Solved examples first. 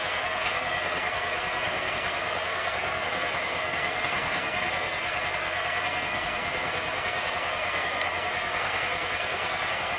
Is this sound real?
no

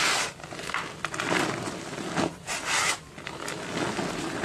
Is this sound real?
yes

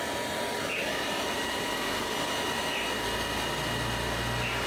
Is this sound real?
yes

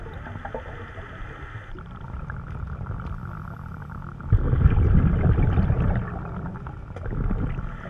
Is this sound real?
yes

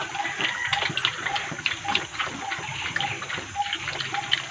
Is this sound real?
yes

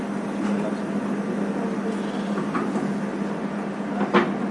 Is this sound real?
yes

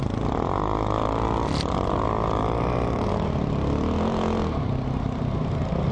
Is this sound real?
yes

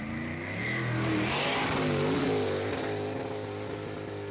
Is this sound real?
yes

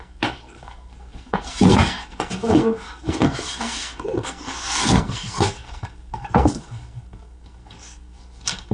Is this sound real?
no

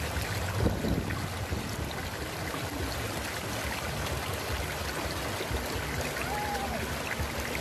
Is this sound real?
yes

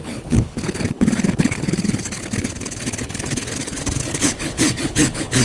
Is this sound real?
no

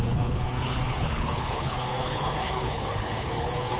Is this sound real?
no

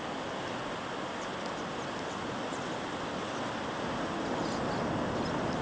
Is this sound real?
yes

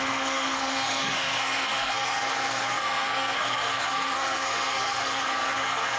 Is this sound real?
no